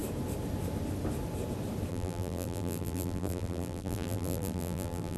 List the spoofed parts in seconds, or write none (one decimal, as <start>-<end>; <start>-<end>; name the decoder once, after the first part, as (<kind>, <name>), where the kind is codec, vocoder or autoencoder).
1.9-5.2 (vocoder, BigVGAN v2)